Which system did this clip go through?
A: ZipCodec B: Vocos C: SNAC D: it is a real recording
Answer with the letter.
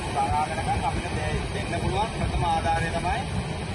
D